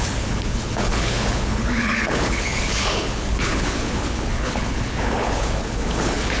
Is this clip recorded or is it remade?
remade